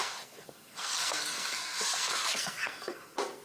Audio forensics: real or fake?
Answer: fake